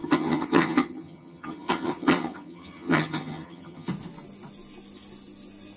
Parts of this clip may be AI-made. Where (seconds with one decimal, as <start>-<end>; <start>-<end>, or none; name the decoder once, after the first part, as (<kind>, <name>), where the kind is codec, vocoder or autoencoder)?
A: 0.0-3.9 (vocoder, HiFi-GAN)